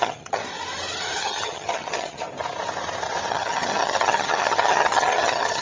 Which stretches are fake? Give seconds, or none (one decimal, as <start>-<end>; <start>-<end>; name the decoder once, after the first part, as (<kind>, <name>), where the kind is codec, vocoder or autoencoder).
0.0-0.4 (vocoder, HiFi-GAN); 1.2-2.2; 3.3-5.6